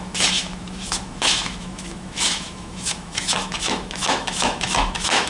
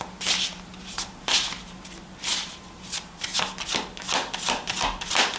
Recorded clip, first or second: second